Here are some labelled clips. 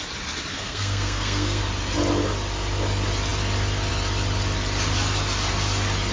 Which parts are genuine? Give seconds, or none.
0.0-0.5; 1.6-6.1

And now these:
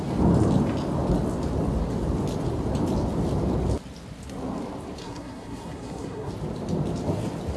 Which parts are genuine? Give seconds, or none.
0.0-5.0; 6.3-7.6

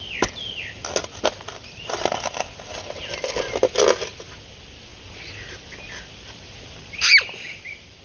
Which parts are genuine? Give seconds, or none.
0.0-8.0

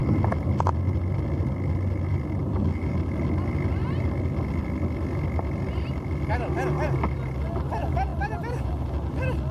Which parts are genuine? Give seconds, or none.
1.4-8.1; 8.7-9.5